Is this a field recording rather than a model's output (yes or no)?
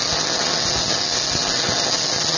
yes